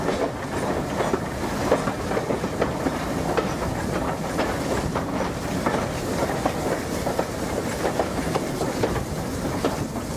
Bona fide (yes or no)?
yes